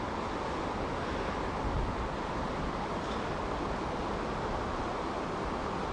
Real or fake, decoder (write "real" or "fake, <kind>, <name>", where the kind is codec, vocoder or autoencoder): real